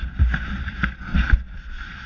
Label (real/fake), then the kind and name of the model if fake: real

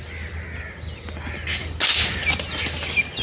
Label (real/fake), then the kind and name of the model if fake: real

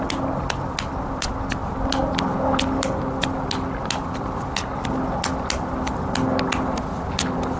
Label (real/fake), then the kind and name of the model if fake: real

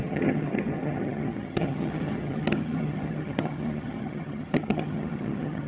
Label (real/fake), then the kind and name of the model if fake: fake, vocoder, HiFi-GAN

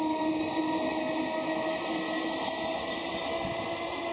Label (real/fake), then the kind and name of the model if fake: real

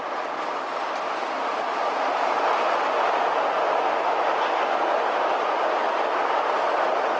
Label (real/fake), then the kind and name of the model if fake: real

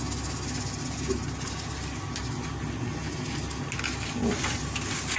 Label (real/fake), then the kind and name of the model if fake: real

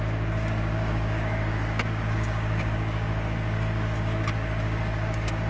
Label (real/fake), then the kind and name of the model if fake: fake, codec, DAC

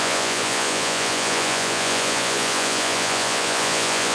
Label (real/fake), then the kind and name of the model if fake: fake, vocoder, Vocos